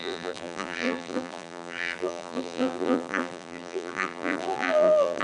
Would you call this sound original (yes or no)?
no